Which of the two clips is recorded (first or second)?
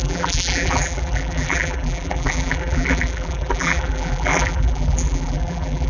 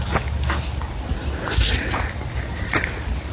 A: second